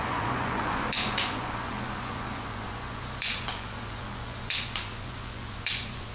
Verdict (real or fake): fake